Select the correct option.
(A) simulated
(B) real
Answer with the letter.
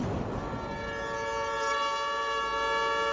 B